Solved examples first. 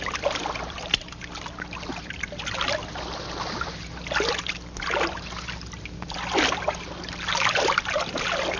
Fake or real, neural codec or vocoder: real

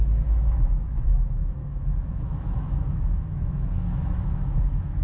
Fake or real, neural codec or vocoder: fake, autoencoder, DAC-VAE